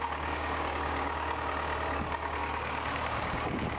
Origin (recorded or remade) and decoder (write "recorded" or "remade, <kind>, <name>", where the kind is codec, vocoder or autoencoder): remade, codec, DAC